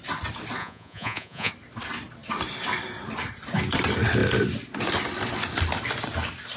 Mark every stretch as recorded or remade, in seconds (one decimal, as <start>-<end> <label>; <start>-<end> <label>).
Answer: 0.0-0.6 recorded; 0.6-1.5 remade; 1.5-6.6 recorded